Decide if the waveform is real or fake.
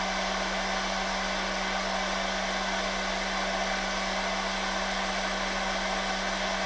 real